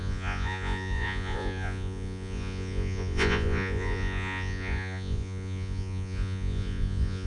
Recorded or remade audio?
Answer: remade